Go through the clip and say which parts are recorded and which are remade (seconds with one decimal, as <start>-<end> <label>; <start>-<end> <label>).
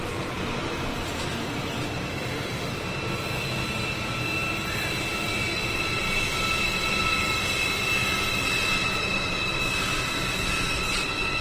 0.0-2.1 recorded; 2.1-2.7 remade; 2.7-11.4 recorded